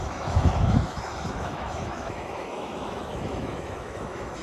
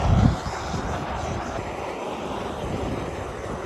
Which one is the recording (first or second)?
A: second